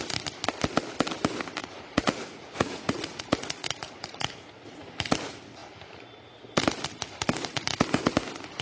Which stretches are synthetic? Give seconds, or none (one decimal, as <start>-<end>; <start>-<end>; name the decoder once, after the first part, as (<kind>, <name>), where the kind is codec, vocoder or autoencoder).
1.6-3.2 (vocoder, Vocos); 3.6-4.7